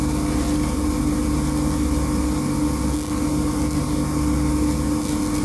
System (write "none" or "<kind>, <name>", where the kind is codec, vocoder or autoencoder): none